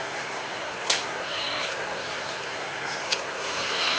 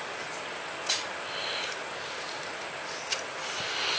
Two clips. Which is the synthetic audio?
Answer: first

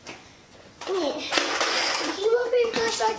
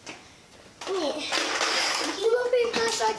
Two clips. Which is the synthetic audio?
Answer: first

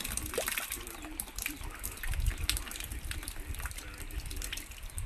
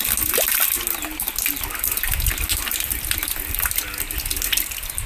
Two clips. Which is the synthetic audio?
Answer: first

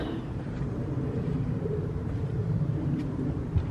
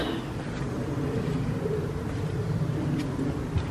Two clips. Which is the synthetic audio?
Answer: first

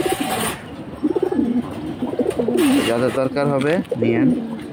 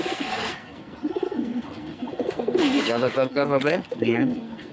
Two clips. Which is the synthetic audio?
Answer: second